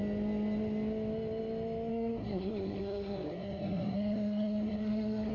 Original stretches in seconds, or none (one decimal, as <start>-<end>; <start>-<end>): 0.0-1.9